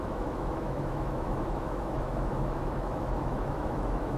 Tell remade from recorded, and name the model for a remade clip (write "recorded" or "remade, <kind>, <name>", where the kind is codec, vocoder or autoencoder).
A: remade, autoencoder, DAC-VAE